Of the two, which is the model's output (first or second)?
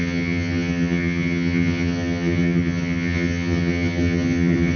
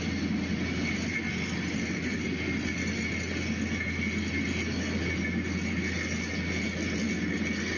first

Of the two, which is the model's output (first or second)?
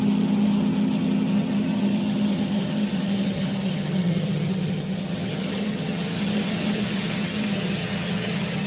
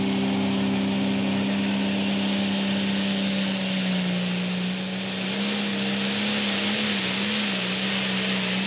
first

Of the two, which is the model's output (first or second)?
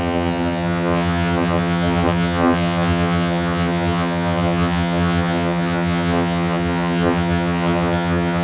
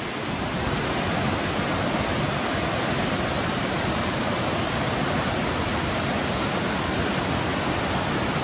first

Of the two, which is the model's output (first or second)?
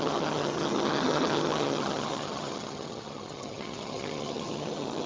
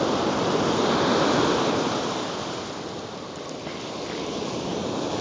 first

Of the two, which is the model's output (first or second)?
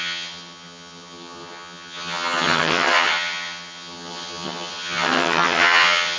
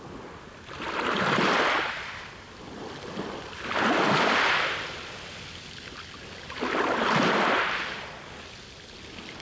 first